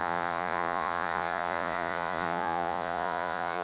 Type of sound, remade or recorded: remade